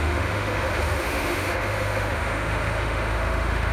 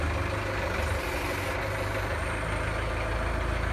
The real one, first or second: second